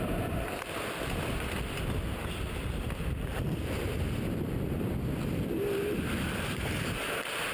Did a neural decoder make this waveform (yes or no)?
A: yes